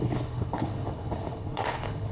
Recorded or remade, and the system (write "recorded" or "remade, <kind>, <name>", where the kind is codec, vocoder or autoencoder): remade, codec, HILCodec